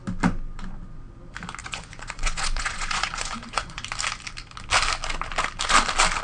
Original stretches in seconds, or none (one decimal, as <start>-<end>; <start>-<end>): 0.0-1.6; 3.8-6.2